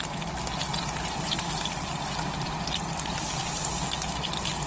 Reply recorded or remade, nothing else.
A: recorded